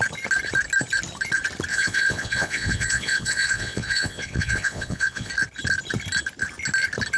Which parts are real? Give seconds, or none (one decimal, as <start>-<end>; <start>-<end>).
0.0-1.7; 5.3-7.2